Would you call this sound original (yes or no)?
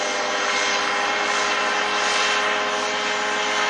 yes